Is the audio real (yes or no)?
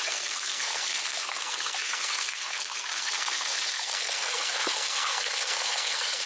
no